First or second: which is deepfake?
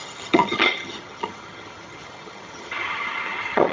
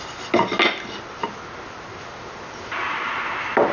first